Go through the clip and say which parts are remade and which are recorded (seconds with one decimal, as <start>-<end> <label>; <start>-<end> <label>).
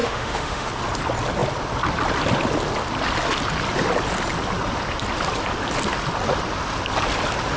0.0-0.7 remade; 0.7-7.6 recorded